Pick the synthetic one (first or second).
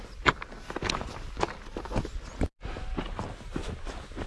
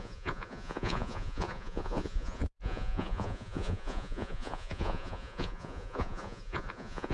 second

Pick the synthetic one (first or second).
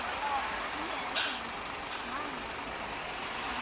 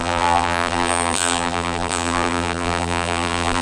second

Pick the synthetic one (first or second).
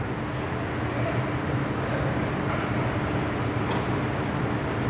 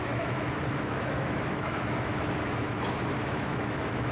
second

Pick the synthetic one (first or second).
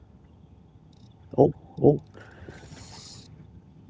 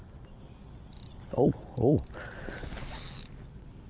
first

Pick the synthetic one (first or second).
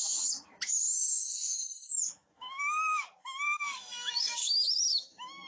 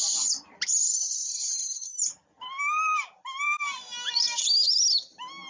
first